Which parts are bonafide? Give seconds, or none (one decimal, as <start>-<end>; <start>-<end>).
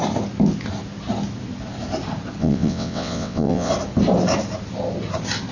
0.0-2.4; 3.7-5.5